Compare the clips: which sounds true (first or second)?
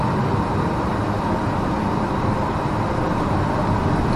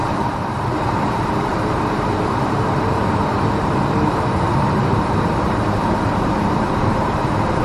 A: first